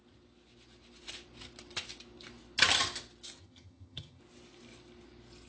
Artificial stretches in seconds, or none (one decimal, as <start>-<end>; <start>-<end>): 3.4-4.2